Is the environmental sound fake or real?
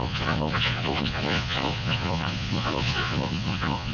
fake